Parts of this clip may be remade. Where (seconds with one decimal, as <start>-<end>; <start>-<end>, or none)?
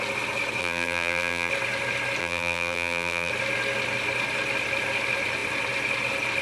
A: 0.6-1.5; 2.2-3.3